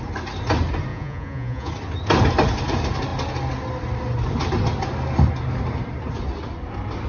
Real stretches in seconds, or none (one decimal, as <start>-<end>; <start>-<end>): 0.0-0.9; 1.7-7.1